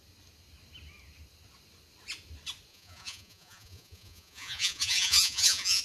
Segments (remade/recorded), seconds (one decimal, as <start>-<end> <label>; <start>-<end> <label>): 0.0-2.7 recorded; 2.7-5.8 remade